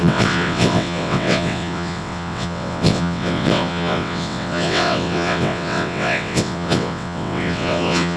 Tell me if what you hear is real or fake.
fake